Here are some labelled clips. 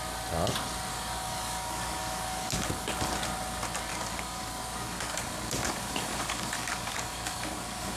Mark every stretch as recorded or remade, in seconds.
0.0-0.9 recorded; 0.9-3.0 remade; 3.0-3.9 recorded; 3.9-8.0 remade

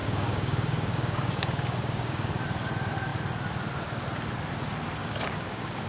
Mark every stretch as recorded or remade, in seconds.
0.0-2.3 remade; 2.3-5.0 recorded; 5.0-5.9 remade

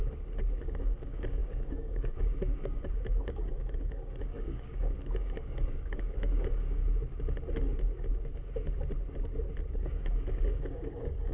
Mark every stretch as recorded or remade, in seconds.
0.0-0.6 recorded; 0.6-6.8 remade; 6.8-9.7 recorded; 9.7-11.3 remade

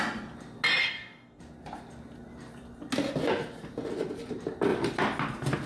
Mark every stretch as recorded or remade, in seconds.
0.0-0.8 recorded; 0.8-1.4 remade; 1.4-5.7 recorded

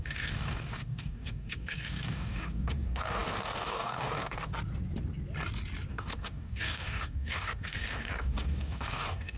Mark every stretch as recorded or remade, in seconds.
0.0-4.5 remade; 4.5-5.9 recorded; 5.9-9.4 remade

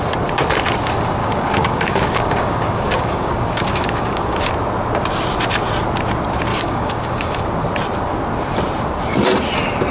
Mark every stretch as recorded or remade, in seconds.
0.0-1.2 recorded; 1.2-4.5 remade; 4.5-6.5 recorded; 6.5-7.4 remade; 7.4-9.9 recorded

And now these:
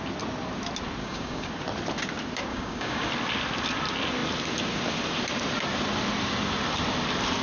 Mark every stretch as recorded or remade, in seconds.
0.0-1.0 recorded; 1.0-1.5 remade; 1.5-2.5 recorded; 2.5-3.1 remade; 3.1-7.4 recorded